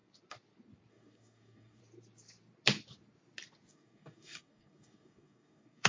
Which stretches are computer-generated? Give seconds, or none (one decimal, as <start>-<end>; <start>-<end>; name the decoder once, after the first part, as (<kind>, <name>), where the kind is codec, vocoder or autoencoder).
0.9-1.8 (codec, DAC); 3.7-5.9